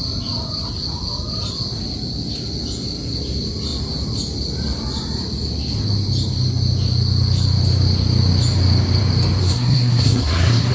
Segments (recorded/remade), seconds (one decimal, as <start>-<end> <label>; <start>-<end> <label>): 0.0-9.4 recorded; 9.4-10.7 remade